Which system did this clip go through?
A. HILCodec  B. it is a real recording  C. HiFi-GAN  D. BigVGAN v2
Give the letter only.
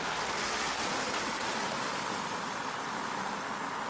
B